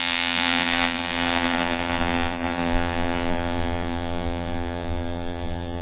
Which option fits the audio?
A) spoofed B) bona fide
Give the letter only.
A